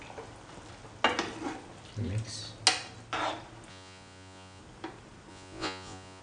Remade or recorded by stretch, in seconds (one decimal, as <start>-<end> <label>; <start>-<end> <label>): 0.0-3.7 recorded; 3.7-4.6 remade; 4.6-5.3 recorded; 5.3-6.2 remade